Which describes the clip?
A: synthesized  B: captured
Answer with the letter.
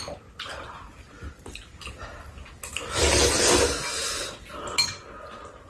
B